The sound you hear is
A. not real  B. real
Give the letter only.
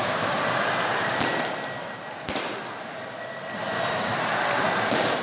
B